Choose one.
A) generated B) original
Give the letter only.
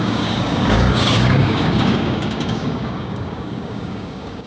A